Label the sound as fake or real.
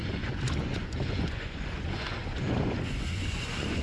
fake